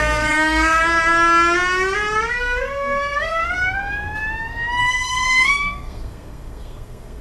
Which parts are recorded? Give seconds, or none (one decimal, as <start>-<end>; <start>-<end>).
0.8-2.3; 3.4-4.8